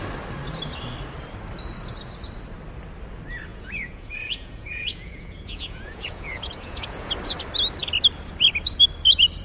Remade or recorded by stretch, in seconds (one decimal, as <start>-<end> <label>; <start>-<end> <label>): 0.0-3.5 recorded; 3.5-7.1 remade; 7.1-9.4 recorded